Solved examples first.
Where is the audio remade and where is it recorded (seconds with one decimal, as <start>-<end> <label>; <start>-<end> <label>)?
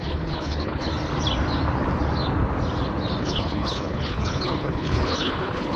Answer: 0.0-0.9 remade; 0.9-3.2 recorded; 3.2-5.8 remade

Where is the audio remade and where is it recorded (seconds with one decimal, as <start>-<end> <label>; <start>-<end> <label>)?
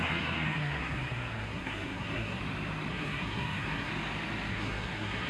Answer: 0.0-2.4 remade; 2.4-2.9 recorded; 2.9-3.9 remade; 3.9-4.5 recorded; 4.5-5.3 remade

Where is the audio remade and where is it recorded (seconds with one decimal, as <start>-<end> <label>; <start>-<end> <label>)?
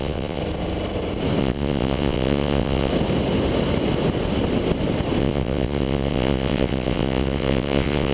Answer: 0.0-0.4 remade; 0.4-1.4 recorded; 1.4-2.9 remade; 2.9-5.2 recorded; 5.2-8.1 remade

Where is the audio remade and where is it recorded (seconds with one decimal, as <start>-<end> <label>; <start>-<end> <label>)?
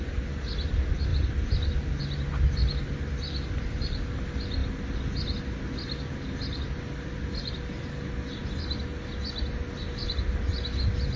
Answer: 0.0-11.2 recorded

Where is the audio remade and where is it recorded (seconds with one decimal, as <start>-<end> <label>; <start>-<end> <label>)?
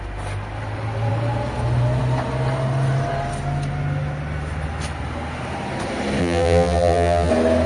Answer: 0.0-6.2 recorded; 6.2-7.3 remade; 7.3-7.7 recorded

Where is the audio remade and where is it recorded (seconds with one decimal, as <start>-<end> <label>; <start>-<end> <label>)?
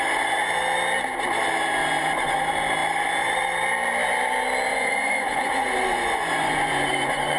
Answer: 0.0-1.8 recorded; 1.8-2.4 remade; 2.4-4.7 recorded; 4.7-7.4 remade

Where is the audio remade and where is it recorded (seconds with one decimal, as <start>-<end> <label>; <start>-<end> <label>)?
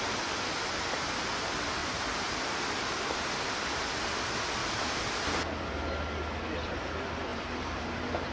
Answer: 0.0-1.8 recorded; 1.8-2.7 remade; 2.7-4.6 recorded; 4.6-5.4 remade; 5.4-7.3 recorded; 7.3-8.3 remade